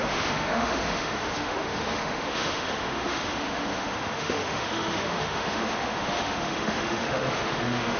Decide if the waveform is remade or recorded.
remade